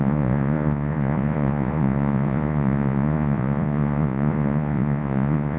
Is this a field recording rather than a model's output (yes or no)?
no